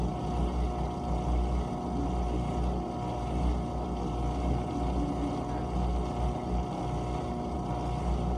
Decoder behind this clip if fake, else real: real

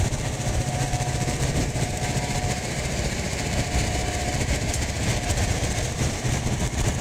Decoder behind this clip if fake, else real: fake, vocoder, BigVGAN v2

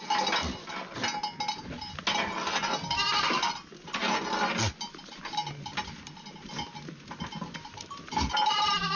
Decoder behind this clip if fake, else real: real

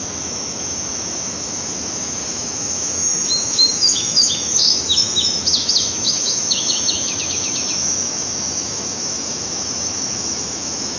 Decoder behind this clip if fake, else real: fake, autoencoder, DAC-VAE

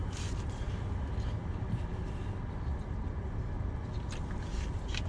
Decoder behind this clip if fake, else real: real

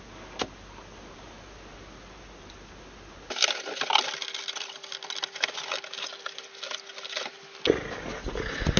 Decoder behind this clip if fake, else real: real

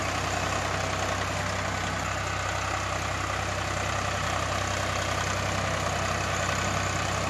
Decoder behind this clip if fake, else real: real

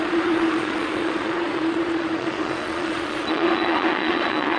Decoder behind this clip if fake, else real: fake, vocoder, Vocos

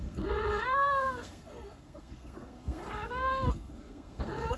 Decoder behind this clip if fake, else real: fake, codec, SNAC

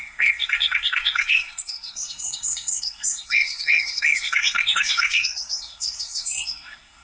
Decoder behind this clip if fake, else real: fake, codec, SNAC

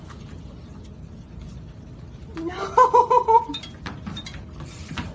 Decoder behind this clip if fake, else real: real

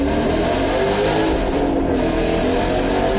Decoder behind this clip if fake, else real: real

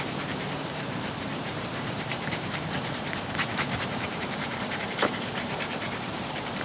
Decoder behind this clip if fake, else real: fake, vocoder, BigVGAN v2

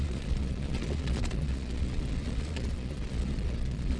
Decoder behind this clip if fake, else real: fake, vocoder, Vocos